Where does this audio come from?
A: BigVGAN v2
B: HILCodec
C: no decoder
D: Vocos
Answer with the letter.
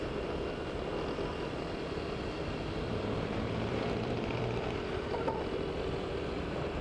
A